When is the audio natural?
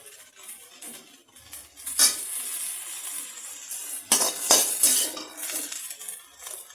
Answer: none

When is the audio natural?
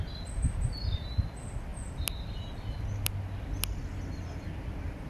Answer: 0.0-5.1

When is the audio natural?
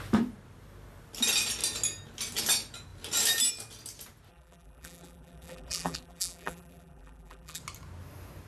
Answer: 0.0-4.3; 7.6-8.5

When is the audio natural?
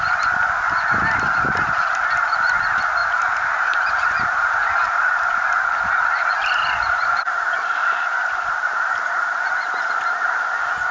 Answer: 0.0-3.0; 4.8-6.6; 9.9-10.9